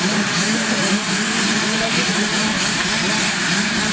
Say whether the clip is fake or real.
fake